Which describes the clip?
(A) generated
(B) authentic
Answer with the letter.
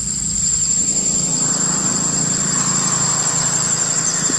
B